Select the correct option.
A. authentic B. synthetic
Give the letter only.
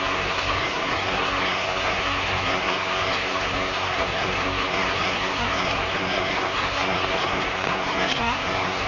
B